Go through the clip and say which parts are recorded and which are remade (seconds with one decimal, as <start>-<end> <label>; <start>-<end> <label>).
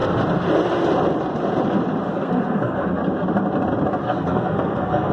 0.0-2.1 recorded; 2.1-3.0 remade; 3.0-4.0 recorded; 4.0-5.1 remade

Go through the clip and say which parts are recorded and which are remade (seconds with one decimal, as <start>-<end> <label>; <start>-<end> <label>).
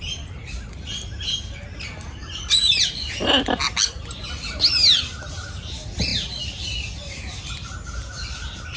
0.0-8.8 recorded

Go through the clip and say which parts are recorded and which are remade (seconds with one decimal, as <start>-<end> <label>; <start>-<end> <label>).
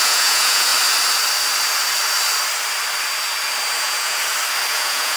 0.0-0.7 remade; 0.7-3.8 recorded; 3.8-4.2 remade; 4.2-4.7 recorded; 4.7-5.2 remade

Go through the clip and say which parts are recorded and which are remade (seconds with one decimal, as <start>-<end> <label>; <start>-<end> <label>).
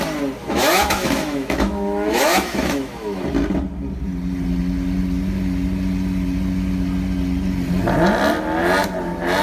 0.0-0.4 recorded; 0.4-3.2 remade; 3.2-9.4 recorded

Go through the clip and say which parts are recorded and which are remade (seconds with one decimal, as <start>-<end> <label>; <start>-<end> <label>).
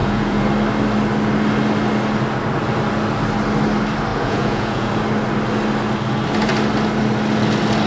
0.0-0.5 remade; 0.5-4.1 recorded; 4.1-4.9 remade; 4.9-7.9 recorded